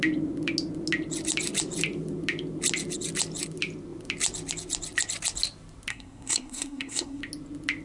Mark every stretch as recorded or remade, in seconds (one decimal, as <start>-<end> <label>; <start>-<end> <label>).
0.0-5.9 recorded; 5.9-7.2 remade; 7.2-7.8 recorded